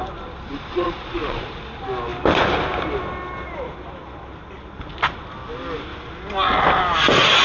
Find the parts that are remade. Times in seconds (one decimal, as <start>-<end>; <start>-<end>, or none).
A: 0.7-1.6